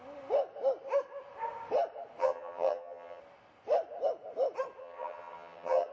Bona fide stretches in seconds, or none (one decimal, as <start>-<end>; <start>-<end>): 0.0-2.2; 3.2-4.8